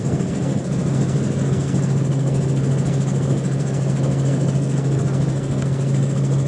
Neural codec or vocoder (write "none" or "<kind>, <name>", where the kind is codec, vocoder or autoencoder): codec, SNAC